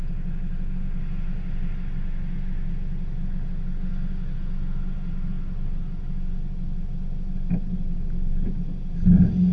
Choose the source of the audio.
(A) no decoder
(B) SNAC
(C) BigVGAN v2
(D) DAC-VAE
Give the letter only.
A